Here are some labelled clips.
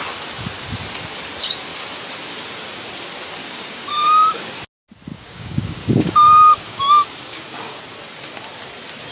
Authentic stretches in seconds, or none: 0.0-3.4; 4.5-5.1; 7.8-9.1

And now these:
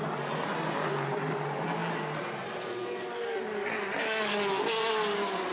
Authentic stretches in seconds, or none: 0.0-5.5

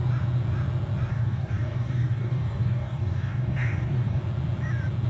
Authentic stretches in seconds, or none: 0.0-1.1; 4.2-5.1